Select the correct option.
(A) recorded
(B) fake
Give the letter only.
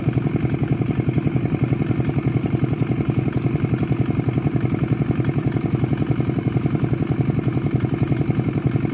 A